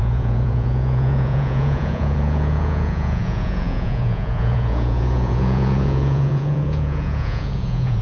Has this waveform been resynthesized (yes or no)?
yes